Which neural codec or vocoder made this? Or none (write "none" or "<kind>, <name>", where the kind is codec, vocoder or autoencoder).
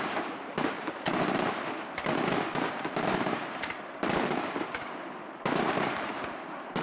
vocoder, BigVGAN v2